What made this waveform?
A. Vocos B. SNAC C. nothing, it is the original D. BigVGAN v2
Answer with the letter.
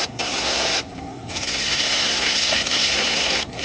B